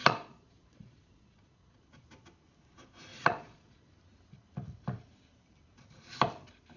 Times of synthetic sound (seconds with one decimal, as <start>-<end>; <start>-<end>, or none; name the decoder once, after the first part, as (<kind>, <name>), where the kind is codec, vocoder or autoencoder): 0.0-1.8 (vocoder, Vocos); 3.1-3.9